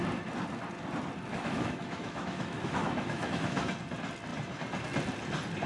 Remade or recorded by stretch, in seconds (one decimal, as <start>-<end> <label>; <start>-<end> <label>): 0.0-1.3 recorded; 1.3-3.7 remade; 3.7-5.7 recorded